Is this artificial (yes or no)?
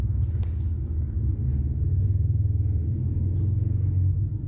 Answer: no